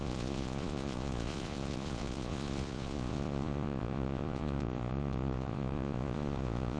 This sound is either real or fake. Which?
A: fake